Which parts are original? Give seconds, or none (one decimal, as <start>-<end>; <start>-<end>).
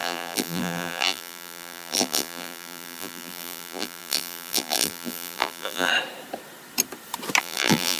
5.9-7.4